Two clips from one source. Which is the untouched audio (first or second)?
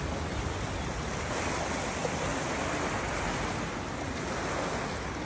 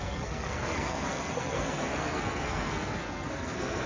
first